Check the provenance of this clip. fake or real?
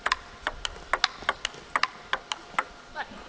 real